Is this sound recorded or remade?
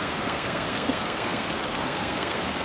remade